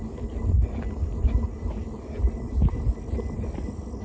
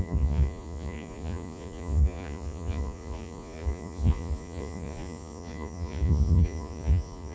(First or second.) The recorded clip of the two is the first